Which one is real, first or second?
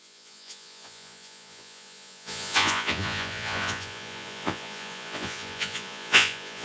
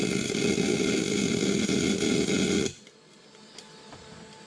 second